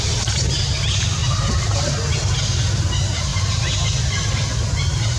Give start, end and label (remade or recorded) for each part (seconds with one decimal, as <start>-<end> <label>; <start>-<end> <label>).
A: 0.0-1.2 remade; 1.2-2.8 recorded; 2.8-3.3 remade; 3.3-4.7 recorded; 4.7-5.2 remade